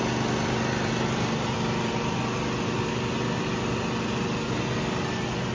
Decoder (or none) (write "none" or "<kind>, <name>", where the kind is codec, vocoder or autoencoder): none